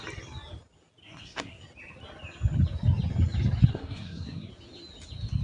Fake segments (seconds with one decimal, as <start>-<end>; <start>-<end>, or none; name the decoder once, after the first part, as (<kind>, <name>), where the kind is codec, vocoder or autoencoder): 1.0-1.6 (codec, SNAC); 3.7-4.5